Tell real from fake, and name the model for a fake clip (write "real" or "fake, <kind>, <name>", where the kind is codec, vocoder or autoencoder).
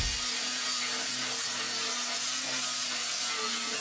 real